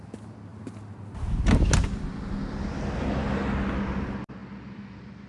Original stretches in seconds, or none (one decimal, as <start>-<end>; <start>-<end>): 0.0-5.3